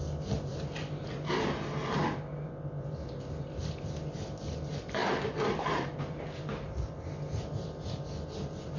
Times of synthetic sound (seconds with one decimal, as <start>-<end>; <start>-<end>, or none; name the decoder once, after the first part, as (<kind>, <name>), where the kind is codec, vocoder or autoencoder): none